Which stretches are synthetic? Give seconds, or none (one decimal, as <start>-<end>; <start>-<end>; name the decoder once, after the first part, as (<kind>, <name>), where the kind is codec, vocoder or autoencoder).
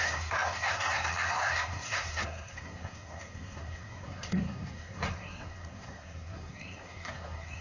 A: 0.0-7.6 (codec, SNAC)